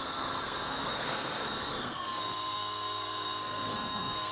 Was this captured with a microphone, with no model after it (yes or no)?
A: no